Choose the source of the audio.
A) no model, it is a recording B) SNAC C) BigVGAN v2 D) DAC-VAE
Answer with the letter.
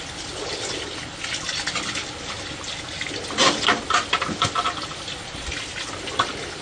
A